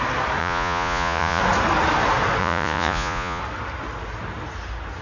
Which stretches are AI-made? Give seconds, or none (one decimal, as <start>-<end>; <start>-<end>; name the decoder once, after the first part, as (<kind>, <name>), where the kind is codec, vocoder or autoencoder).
0.4-1.4 (vocoder, Vocos); 2.4-3.4